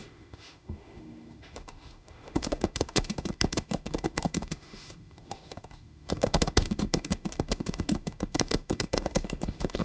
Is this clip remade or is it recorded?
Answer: remade